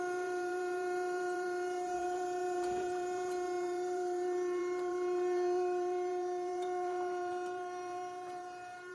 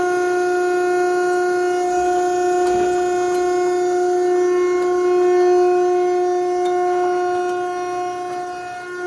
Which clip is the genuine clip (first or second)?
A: second